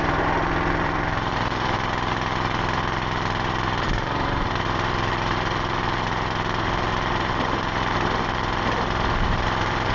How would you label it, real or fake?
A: fake